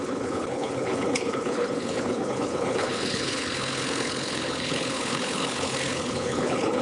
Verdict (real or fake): fake